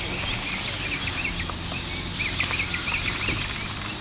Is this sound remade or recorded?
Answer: recorded